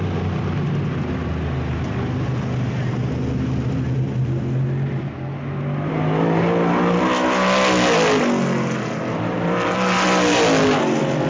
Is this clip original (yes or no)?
yes